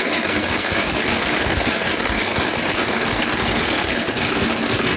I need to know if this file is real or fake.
fake